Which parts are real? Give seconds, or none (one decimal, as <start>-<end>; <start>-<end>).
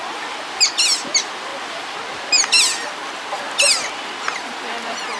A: 0.0-5.2